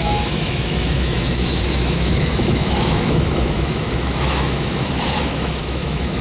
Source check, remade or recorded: remade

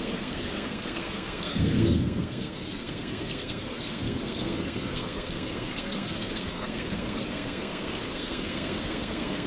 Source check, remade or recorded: remade